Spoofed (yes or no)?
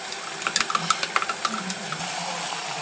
no